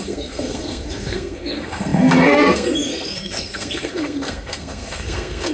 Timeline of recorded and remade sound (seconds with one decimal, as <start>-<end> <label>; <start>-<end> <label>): 0.0-5.5 remade